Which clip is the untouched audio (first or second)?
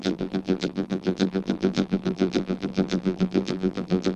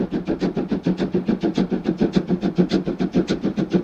second